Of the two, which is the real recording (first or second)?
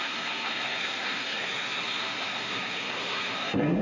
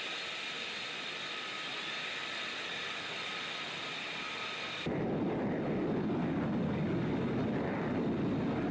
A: second